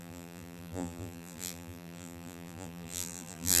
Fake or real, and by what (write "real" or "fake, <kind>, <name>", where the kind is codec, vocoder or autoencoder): fake, vocoder, BigVGAN v2